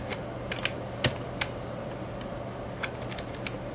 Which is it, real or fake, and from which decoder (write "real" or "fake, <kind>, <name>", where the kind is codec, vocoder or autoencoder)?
real